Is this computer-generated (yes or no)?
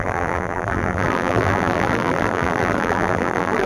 yes